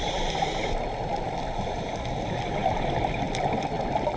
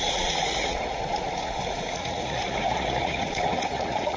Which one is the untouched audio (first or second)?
first